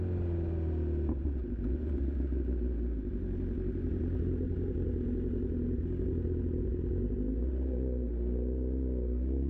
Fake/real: real